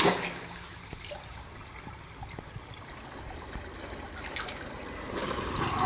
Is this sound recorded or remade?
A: recorded